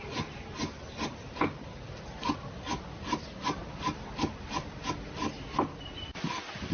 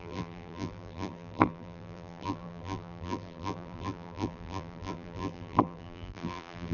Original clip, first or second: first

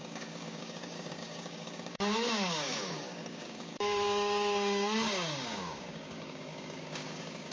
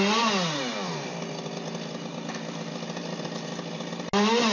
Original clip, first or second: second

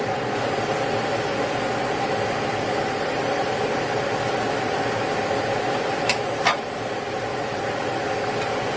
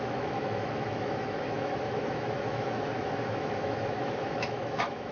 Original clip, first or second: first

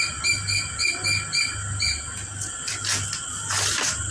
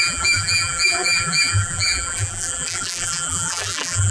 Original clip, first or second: first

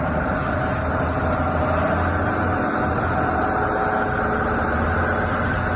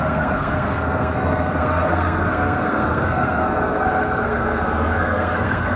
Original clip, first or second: first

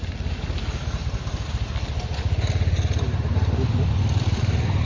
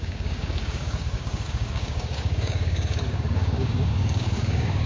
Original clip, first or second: first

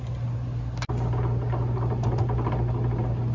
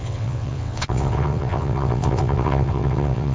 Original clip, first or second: first